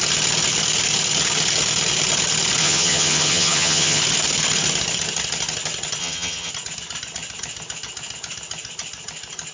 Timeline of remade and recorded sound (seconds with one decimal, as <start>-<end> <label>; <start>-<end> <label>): 0.0-2.6 recorded; 2.6-4.0 remade; 4.0-6.0 recorded; 6.0-6.5 remade; 6.5-9.5 recorded